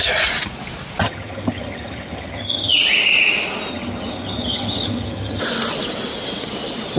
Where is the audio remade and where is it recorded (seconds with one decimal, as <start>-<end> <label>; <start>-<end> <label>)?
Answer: 0.0-1.0 recorded; 1.0-2.8 remade; 2.8-3.7 recorded; 3.7-5.4 remade; 5.4-7.0 recorded